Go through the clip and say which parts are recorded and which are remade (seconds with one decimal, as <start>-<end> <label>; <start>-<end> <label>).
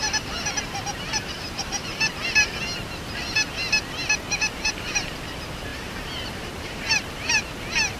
0.0-0.9 recorded; 0.9-2.1 remade; 2.1-5.7 recorded; 5.7-7.4 remade; 7.4-8.0 recorded